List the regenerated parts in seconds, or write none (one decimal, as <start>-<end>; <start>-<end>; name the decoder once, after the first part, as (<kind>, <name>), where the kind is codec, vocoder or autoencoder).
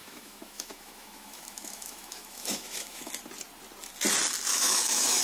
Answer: 0.0-3.1 (autoencoder, DAC-VAE); 4.5-5.2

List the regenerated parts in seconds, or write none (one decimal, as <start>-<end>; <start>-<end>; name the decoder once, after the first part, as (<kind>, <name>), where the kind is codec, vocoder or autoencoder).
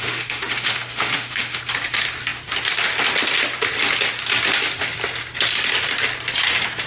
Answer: 0.0-1.6 (autoencoder, DAC-VAE)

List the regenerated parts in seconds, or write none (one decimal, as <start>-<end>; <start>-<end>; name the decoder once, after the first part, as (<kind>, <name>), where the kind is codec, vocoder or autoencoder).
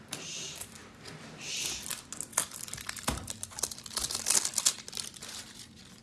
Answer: none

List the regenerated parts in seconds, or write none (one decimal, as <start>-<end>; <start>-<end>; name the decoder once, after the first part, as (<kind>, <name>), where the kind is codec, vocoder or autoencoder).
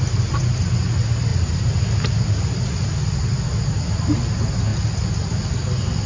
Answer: none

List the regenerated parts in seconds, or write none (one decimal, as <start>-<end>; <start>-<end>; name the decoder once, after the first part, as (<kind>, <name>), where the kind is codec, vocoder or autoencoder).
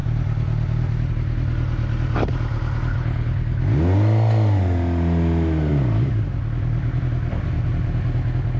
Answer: 2.9-3.6 (codec, HILCodec)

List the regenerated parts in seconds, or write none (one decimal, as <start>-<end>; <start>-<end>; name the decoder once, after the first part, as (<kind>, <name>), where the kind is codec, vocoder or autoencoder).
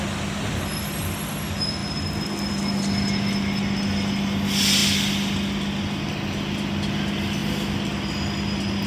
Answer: none